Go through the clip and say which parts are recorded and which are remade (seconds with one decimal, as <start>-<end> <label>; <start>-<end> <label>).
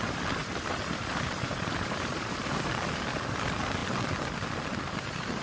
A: 0.0-0.4 recorded; 0.4-2.7 remade; 2.7-5.4 recorded